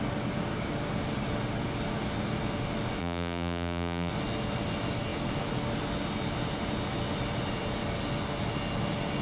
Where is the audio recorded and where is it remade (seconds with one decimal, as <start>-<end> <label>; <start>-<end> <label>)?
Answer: 0.0-3.0 recorded; 3.0-4.1 remade; 4.1-9.2 recorded